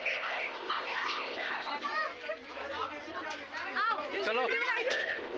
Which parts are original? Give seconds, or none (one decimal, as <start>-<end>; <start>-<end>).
1.7-4.9